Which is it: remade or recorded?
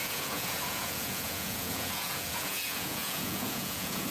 remade